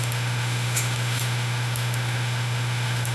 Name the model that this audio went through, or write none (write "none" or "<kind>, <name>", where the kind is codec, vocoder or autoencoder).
autoencoder, DAC-VAE